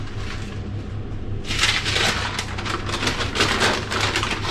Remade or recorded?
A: recorded